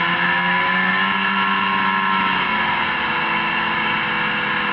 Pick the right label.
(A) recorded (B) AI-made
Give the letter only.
A